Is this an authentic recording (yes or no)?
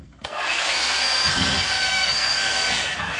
no